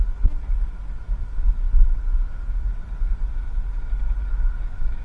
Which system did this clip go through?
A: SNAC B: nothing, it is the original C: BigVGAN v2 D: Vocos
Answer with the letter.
B